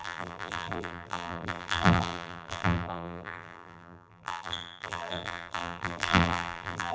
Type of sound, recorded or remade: remade